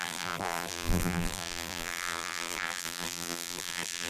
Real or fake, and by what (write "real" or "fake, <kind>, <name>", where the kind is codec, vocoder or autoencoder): fake, vocoder, BigVGAN v2